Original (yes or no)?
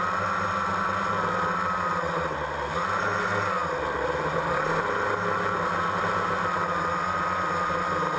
yes